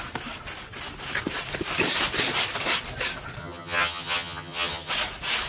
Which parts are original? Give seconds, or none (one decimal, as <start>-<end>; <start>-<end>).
0.0-3.4; 4.9-5.5